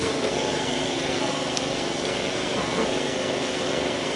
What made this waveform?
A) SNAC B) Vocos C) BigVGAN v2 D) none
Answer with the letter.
A